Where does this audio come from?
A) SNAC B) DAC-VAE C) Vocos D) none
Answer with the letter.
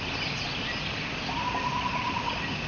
D